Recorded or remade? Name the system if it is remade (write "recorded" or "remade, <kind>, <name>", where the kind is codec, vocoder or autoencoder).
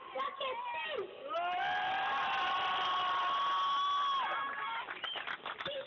recorded